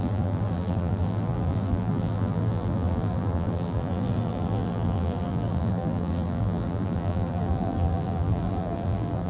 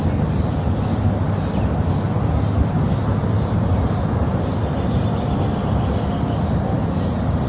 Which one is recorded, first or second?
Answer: second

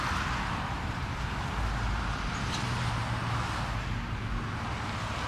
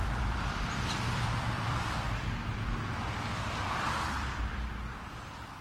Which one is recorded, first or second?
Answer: first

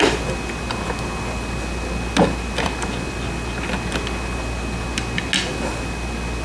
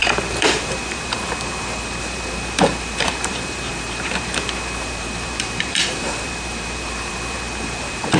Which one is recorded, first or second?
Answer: first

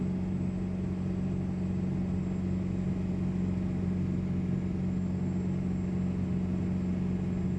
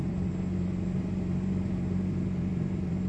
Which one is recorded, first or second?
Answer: first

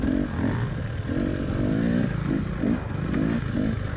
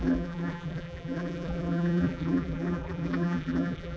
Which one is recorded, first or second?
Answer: first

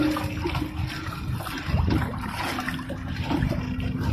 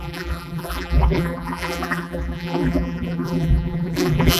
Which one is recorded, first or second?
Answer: first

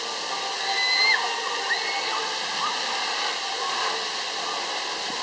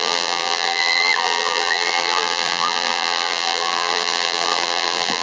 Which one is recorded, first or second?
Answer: first